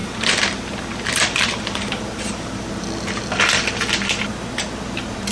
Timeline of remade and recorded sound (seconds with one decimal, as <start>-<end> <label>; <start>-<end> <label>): 0.0-2.7 remade; 2.7-5.3 recorded